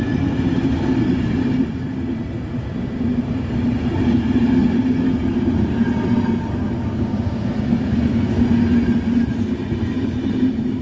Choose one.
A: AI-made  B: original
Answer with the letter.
B